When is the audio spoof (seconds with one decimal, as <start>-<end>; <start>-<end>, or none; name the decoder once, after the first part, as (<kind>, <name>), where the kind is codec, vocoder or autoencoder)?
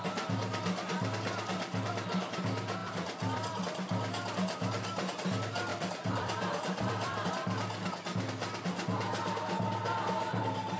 2.8-3.6 (vocoder, BigVGAN v2); 5.7-7.3